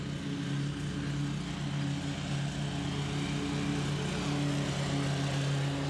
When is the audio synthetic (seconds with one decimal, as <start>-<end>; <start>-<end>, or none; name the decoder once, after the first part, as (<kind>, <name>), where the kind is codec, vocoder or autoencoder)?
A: none